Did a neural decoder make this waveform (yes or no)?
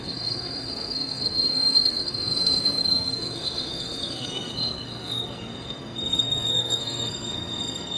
yes